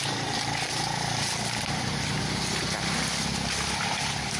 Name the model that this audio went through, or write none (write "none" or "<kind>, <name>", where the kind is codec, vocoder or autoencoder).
none